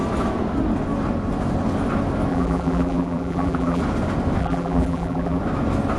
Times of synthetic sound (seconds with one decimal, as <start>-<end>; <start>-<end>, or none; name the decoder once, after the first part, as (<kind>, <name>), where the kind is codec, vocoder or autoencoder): 2.3-3.8 (vocoder, BigVGAN v2); 4.4-5.4